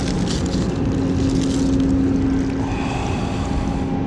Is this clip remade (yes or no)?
no